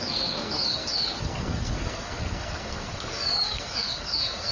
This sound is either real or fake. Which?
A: fake